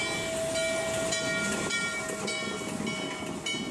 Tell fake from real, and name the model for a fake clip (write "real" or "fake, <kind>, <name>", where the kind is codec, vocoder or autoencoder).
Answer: real